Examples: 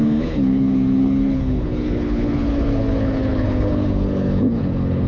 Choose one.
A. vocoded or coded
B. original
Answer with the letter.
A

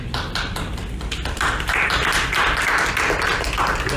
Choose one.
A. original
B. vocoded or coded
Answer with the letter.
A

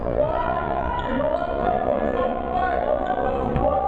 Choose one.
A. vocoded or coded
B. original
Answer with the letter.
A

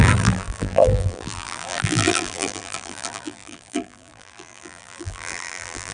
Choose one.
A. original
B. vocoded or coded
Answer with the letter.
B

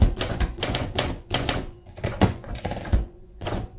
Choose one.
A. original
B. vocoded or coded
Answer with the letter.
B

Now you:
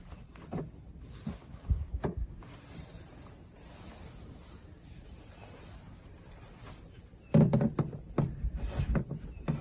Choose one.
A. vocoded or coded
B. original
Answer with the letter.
B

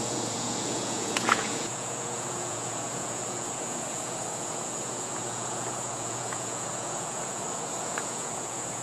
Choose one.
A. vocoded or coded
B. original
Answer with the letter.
A